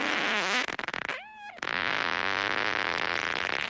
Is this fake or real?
real